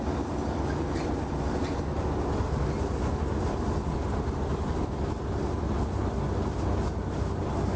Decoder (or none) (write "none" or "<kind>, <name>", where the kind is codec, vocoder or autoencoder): none